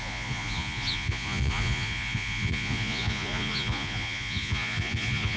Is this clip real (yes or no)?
no